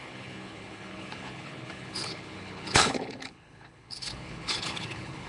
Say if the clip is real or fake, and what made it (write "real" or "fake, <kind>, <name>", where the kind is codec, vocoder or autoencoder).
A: fake, codec, HILCodec